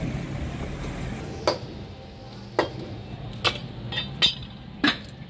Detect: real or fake real